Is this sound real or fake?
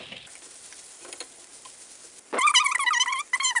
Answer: real